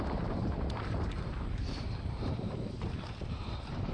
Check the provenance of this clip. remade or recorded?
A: remade